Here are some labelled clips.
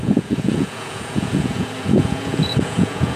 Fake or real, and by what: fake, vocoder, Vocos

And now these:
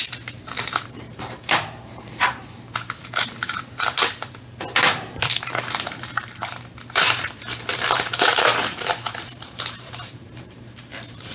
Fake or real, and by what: fake, vocoder, BigVGAN v2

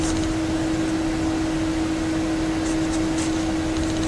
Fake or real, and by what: real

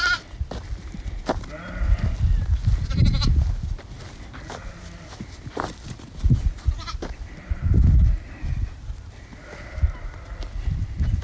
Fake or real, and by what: real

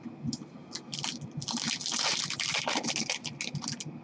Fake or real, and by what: real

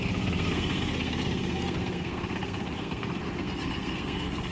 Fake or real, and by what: fake, codec, SNAC